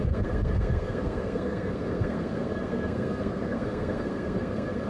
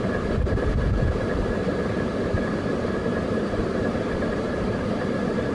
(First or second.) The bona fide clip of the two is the second